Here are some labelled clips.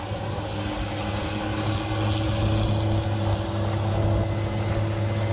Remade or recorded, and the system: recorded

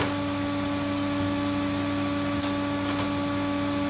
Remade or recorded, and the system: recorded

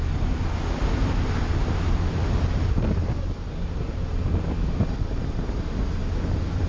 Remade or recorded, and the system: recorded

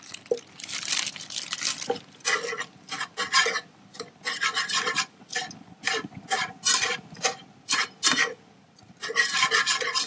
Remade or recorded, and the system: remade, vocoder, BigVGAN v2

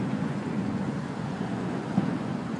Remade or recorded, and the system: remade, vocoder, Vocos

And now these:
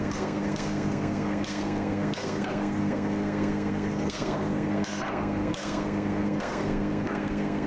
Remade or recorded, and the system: remade, codec, SNAC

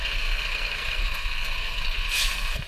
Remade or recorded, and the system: remade, codec, SNAC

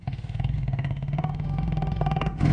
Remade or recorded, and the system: remade, autoencoder, DAC-VAE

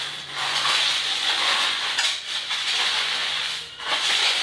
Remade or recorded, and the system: remade, vocoder, Vocos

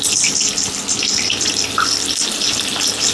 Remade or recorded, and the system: recorded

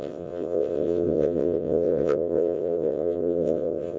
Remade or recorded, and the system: remade, vocoder, WaveNeXt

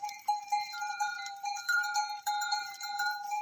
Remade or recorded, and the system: remade, vocoder, BigVGAN v2